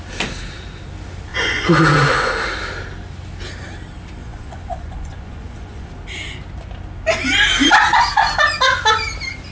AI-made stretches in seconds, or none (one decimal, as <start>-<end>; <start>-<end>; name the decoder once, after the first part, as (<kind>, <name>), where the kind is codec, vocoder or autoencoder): 1.3-2.3 (vocoder, Vocos); 4.2-5.9

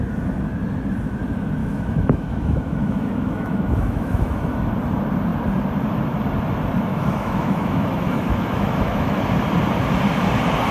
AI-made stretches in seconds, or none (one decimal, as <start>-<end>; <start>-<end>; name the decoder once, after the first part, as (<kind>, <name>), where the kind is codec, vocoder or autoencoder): 1.6-4.7 (autoencoder, DAC-VAE); 6.9-9.2

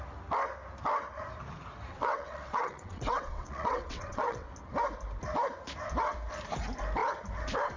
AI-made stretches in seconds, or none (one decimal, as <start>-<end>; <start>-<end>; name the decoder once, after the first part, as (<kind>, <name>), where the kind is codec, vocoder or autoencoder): 1.9-4.5 (vocoder, WaveNeXt)

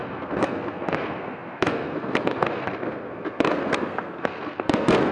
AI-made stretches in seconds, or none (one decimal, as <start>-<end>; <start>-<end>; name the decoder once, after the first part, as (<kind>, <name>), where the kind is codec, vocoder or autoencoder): 0.0-5.1 (codec, SNAC)

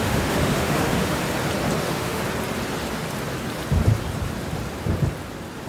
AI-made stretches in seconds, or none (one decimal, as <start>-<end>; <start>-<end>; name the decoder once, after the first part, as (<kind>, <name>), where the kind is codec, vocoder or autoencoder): 0.0-1.2 (autoencoder, DAC-VAE); 1.8-2.2